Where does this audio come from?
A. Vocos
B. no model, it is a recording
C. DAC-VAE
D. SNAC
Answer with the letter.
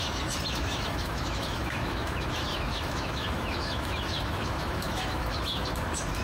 C